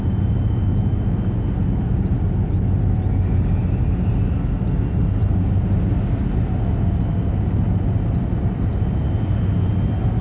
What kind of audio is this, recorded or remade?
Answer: recorded